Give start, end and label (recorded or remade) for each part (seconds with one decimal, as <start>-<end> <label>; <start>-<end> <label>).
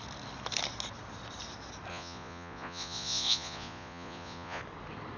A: 0.0-1.9 recorded; 1.9-4.6 remade; 4.6-5.2 recorded